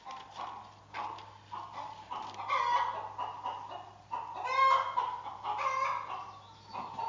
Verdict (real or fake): real